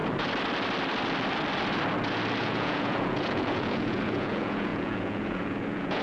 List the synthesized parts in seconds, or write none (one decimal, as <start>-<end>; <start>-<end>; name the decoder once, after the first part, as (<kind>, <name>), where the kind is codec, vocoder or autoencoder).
2.4-6.0 (vocoder, Vocos)